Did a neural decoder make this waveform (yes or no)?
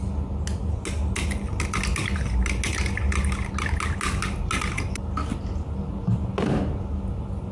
no